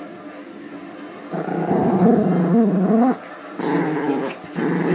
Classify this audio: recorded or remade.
recorded